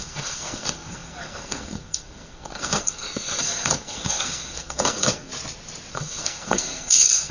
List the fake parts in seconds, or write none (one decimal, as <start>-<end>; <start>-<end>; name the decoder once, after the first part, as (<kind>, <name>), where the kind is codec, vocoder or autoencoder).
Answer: 0.0-5.3 (codec, SNAC); 5.9-7.3